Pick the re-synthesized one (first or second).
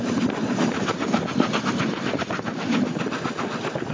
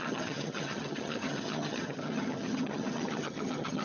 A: second